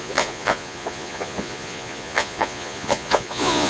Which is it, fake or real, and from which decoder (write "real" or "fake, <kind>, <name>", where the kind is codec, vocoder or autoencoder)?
fake, vocoder, Vocos